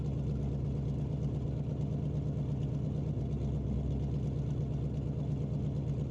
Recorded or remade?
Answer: recorded